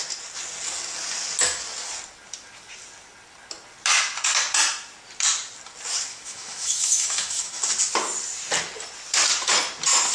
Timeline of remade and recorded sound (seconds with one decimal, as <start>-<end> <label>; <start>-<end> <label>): 0.0-6.1 recorded; 6.1-7.6 remade; 7.6-10.1 recorded